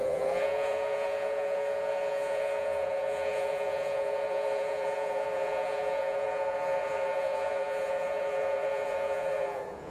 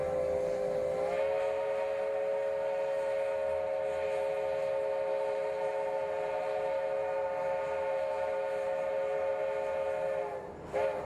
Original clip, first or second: second